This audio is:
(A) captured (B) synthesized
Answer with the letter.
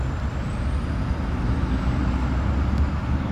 A